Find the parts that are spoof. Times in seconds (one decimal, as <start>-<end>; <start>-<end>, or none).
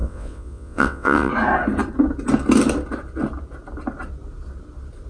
0.0-1.3